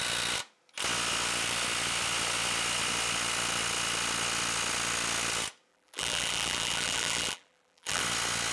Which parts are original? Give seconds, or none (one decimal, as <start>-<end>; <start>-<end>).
0.0-5.7; 8.0-8.5